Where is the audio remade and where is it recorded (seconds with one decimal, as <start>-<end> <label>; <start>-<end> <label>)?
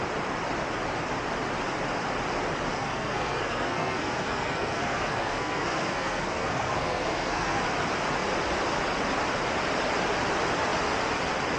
0.0-2.7 recorded; 2.7-7.6 remade; 7.6-11.6 recorded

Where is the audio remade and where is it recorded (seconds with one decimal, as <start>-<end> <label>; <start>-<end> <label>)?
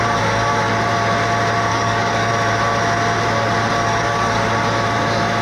0.0-1.7 recorded; 1.7-2.3 remade; 2.3-5.4 recorded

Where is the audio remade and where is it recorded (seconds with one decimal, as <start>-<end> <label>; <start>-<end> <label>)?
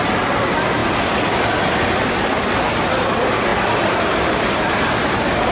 0.0-5.5 recorded